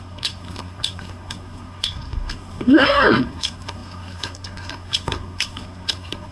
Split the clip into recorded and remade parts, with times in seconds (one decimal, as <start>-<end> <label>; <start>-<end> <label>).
0.0-6.3 remade